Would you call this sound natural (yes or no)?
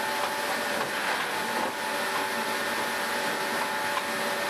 yes